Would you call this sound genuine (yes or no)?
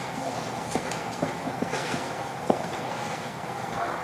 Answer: no